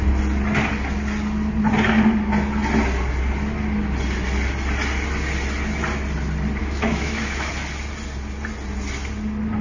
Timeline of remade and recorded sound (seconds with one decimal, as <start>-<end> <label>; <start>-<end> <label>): 0.0-6.6 recorded; 6.6-7.5 remade; 7.5-9.6 recorded